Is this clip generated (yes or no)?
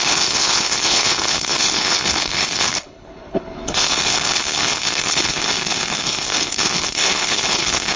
yes